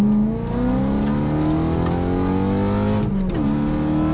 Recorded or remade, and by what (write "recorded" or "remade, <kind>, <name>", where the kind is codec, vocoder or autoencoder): recorded